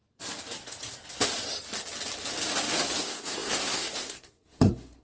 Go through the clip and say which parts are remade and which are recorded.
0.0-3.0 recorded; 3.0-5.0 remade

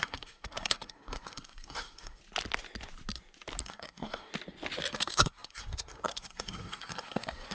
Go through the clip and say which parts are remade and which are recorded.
0.0-2.2 remade; 2.2-3.6 recorded; 3.6-4.3 remade; 4.3-4.9 recorded; 4.9-7.5 remade

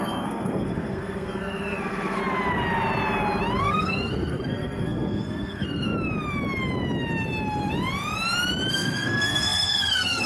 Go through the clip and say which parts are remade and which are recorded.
0.0-2.2 remade; 2.2-3.6 recorded; 3.6-5.9 remade; 5.9-8.7 recorded; 8.7-10.3 remade